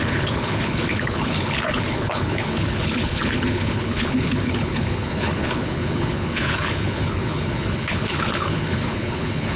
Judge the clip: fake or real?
fake